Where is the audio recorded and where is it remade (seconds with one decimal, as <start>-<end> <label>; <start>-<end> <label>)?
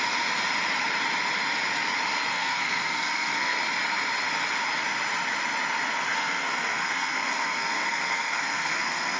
0.0-2.3 recorded; 2.3-3.6 remade; 3.6-6.1 recorded; 6.1-9.2 remade